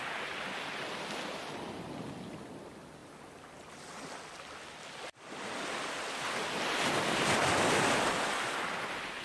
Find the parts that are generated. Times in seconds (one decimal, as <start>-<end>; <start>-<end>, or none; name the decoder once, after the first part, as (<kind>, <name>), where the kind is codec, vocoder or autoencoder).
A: none